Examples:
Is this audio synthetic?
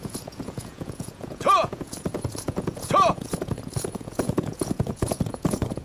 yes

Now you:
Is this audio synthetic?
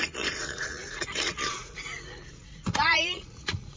yes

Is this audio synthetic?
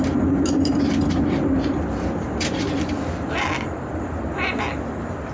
no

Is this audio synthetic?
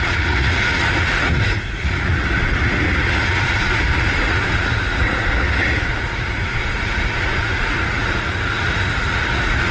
yes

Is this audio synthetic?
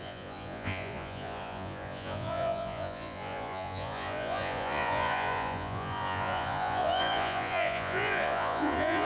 yes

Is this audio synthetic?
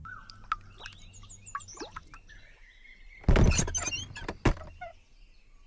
no